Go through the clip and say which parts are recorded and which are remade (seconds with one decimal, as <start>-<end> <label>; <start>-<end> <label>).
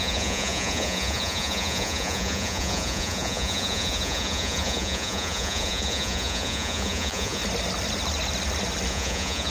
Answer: 0.0-7.4 remade; 7.4-8.9 recorded; 8.9-9.5 remade